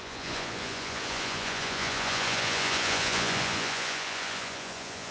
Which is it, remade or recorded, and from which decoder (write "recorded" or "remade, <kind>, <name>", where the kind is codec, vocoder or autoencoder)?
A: remade, vocoder, Vocos